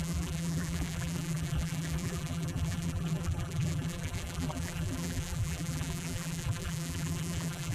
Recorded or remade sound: remade